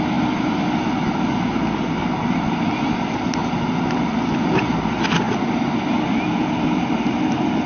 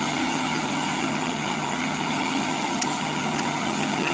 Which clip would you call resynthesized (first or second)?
second